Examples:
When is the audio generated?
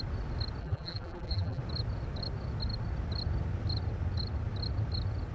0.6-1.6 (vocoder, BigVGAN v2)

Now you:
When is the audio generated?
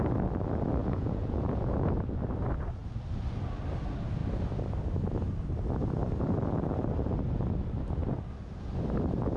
0.8-1.9 (vocoder, Vocos)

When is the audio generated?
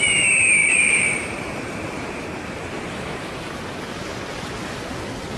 0.6-3.5 (vocoder, BigVGAN v2)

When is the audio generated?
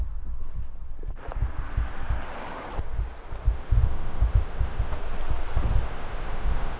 3.4-5.0 (autoencoder, DAC-VAE); 5.8-6.8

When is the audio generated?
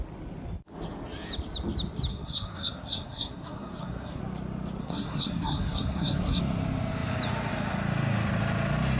2.1-4.2 (codec, SNAC); 4.8-6.4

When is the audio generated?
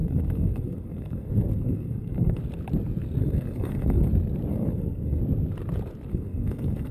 0.0-2.4 (codec, SNAC); 3.2-4.1; 4.5-5.2; 6.1-6.9